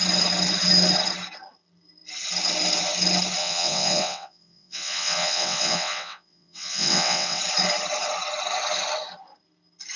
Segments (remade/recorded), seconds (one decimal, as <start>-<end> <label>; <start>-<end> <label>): 0.0-3.4 recorded; 3.4-7.4 remade; 7.4-10.0 recorded